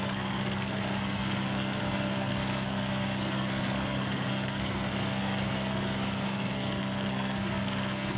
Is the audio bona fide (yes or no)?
no